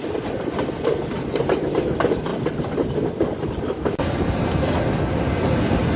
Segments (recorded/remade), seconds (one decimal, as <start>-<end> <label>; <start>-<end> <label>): 0.0-6.0 recorded